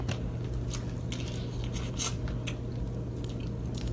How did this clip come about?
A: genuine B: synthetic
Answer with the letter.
A